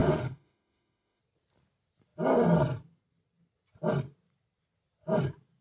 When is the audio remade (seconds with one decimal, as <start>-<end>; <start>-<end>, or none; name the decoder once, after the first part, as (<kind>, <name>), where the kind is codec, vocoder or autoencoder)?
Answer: 0.0-1.2 (autoencoder, DAC-VAE)